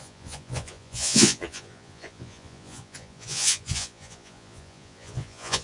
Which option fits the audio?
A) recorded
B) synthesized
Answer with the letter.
B